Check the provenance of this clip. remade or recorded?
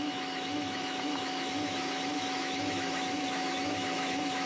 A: remade